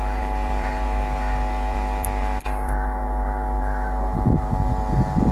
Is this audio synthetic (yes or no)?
no